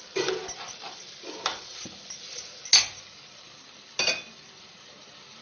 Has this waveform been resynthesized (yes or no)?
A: no